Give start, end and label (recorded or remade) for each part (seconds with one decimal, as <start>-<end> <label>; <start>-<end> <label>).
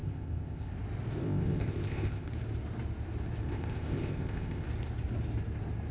0.0-0.7 remade; 0.7-1.2 recorded; 1.2-2.3 remade; 2.3-3.5 recorded; 3.5-4.6 remade; 4.6-5.9 recorded